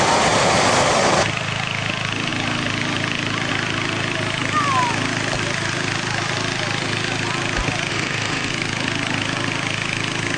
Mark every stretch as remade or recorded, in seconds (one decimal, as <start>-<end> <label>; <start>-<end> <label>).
0.0-7.9 recorded; 7.9-8.5 remade; 8.5-10.4 recorded